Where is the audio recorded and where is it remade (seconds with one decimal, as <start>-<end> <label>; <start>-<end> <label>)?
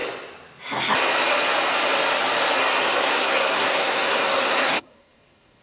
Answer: 0.0-3.0 recorded; 3.0-5.6 remade